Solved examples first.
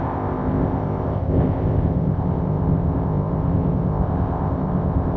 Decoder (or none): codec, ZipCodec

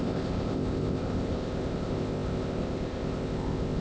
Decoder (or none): codec, ZipCodec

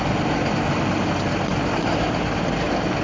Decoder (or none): none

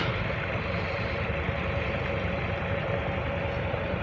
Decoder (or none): none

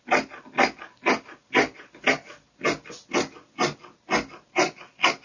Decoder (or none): none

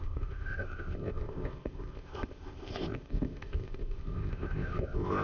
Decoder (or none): codec, ZipCodec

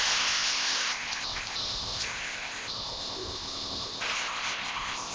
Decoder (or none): codec, ZipCodec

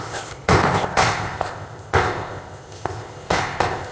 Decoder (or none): codec, ZipCodec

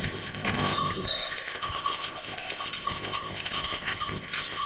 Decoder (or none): codec, ZipCodec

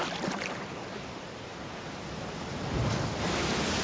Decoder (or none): none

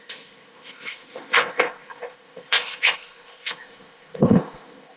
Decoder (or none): codec, ZipCodec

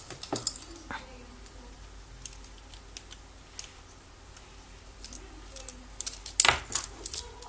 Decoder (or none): none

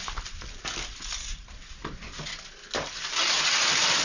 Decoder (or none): none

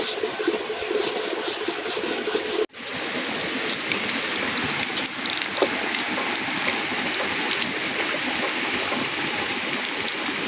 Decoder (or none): none